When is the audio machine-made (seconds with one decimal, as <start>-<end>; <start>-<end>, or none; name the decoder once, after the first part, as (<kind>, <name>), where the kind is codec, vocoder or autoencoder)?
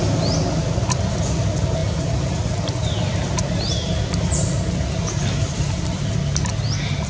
1.8-6.1 (vocoder, BigVGAN v2)